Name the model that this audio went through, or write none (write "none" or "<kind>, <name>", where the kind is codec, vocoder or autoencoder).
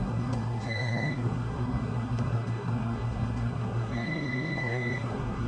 codec, SNAC